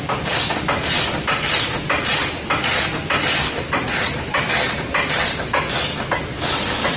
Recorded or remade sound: recorded